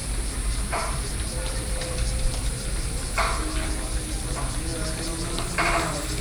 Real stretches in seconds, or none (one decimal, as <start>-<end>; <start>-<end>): 3.7-6.2